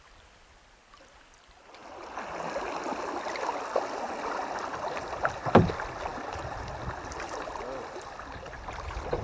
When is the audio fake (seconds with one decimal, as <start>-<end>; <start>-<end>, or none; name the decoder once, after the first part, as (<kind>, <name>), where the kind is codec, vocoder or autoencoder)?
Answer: none